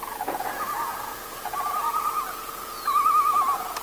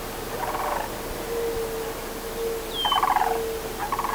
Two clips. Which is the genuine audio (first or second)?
second